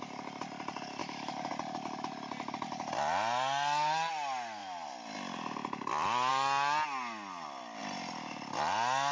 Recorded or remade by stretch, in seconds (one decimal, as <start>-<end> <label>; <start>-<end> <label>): 0.0-1.0 recorded; 1.0-1.5 remade; 1.5-9.1 recorded